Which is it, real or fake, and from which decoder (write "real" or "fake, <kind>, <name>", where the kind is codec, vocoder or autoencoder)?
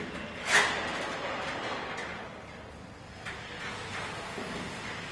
real